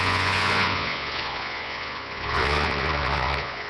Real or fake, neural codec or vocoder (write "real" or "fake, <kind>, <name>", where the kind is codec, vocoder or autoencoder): fake, vocoder, Vocos